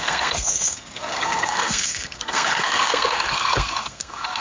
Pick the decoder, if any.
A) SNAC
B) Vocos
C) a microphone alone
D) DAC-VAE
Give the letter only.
A